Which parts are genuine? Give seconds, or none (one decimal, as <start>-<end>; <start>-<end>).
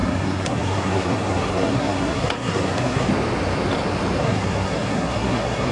3.1-4.2